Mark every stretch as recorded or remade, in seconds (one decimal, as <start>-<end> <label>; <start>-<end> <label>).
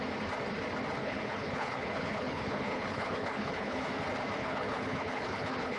0.0-1.0 recorded; 1.0-3.8 remade; 3.8-4.4 recorded; 4.4-5.8 remade